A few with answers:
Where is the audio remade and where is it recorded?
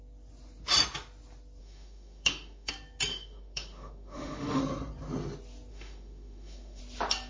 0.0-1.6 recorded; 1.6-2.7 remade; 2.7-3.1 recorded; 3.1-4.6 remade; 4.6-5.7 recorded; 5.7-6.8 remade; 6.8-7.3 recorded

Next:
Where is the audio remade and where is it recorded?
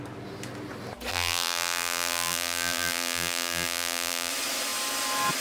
0.0-1.1 recorded; 1.1-4.3 remade; 4.3-5.4 recorded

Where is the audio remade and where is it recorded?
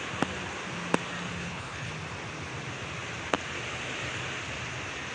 0.0-1.4 recorded; 1.4-1.9 remade; 1.9-5.1 recorded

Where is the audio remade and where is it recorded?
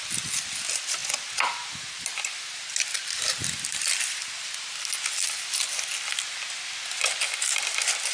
0.0-8.1 recorded